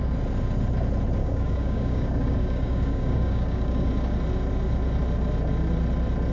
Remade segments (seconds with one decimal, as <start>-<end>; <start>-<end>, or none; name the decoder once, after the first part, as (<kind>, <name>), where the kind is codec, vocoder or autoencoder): 1.2-3.9 (codec, DAC)